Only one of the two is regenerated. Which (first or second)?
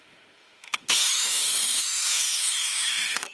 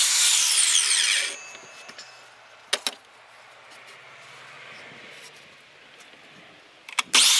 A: first